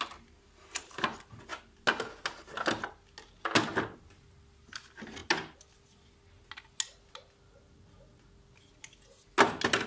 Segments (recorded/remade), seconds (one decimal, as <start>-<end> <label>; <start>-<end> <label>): 0.0-9.9 recorded

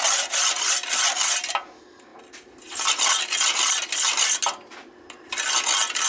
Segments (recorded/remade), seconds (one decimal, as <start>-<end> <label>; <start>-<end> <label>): 0.0-6.1 recorded

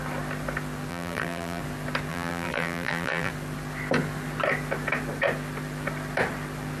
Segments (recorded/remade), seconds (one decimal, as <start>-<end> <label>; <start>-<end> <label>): 0.0-0.9 recorded; 0.9-1.6 remade; 1.6-2.1 recorded; 2.1-3.3 remade; 3.3-6.8 recorded

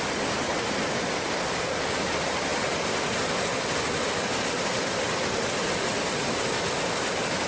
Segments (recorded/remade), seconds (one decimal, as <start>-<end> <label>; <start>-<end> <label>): 0.0-7.5 recorded

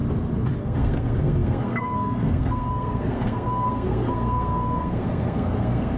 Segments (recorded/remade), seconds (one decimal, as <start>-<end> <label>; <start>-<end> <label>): 0.0-0.6 recorded; 0.6-6.0 remade